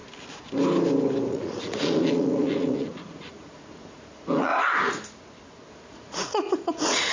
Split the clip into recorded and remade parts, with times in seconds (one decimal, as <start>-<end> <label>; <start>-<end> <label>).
0.0-1.3 recorded; 1.3-4.5 remade; 4.5-5.7 recorded; 5.7-7.1 remade